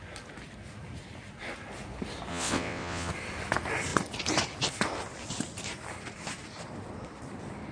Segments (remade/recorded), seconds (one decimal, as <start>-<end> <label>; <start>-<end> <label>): 0.0-2.3 recorded; 2.3-3.1 remade; 3.1-7.7 recorded